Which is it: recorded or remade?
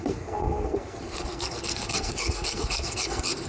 remade